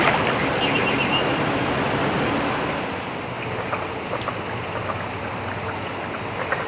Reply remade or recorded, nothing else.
recorded